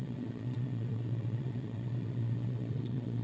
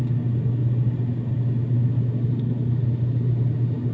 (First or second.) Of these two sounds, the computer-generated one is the first